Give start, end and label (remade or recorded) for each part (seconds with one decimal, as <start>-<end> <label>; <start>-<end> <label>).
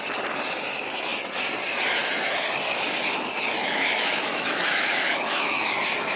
0.0-3.6 recorded; 3.6-5.8 remade; 5.8-6.2 recorded